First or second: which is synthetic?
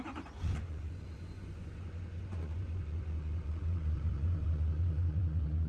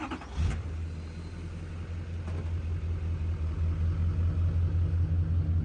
first